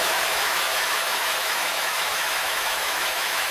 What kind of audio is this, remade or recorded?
remade